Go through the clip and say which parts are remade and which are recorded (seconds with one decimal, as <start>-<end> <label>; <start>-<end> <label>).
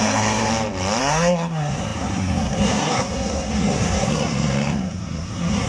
0.0-0.5 remade; 0.5-1.0 recorded; 1.0-5.7 remade